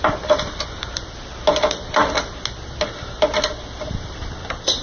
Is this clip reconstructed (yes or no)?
no